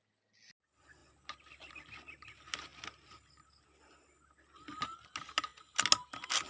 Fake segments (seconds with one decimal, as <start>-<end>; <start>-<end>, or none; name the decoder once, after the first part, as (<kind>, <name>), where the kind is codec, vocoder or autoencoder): none